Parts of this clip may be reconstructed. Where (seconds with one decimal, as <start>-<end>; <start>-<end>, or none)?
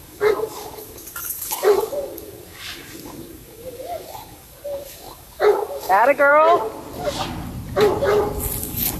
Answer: 0.0-6.3; 8.6-9.0